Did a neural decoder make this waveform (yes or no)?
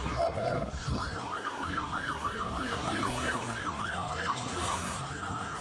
yes